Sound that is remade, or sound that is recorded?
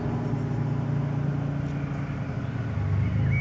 recorded